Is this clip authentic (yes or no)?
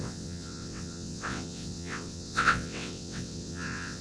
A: no